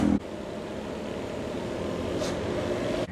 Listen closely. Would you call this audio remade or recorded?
recorded